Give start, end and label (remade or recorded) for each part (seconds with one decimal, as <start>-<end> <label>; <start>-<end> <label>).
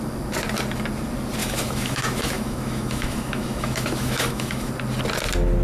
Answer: 0.0-1.4 recorded; 1.4-4.7 remade; 4.7-5.6 recorded